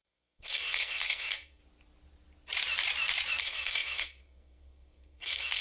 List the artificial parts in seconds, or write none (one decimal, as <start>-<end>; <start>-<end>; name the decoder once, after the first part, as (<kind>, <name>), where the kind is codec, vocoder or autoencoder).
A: 0.0-1.6 (codec, SNAC); 3.4-5.6

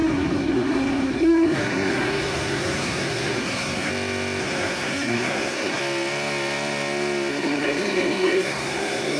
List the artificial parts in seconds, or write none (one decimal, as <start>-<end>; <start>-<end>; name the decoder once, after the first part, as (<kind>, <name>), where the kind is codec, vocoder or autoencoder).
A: 0.0-3.9 (codec, SNAC); 4.4-5.8; 7.3-9.2

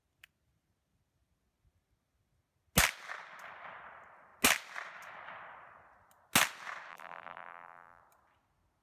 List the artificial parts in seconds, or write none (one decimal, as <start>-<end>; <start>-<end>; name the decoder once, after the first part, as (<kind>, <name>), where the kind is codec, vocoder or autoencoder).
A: 6.9-8.0 (vocoder, BigVGAN v2)

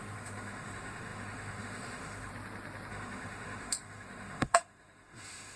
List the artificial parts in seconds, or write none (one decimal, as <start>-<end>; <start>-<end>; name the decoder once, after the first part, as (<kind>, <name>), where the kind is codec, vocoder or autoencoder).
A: 0.0-2.3 (autoencoder, DAC-VAE); 2.9-5.6

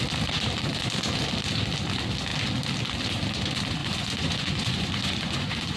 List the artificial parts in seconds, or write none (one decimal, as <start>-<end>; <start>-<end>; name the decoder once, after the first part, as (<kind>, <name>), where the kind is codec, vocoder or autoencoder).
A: 3.8-5.8 (vocoder, Vocos)

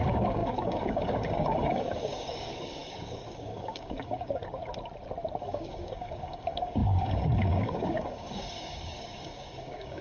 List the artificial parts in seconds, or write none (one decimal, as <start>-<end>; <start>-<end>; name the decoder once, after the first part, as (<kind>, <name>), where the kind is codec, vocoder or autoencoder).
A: 0.0-4.6 (codec, DAC); 5.4-10.0

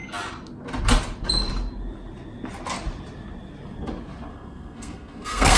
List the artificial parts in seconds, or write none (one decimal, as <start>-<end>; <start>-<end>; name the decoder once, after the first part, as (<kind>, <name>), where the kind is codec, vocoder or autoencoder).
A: 4.3-5.6 (codec, SNAC)